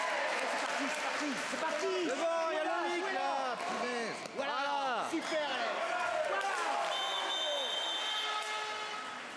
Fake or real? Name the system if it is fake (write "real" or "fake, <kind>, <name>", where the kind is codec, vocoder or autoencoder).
real